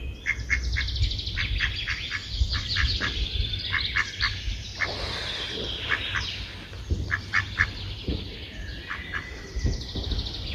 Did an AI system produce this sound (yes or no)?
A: no